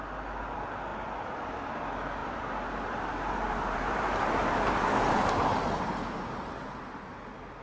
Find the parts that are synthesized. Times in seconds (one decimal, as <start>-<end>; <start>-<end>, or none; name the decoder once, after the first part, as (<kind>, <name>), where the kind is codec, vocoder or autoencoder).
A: 2.2-6.8 (vocoder, BigVGAN v2)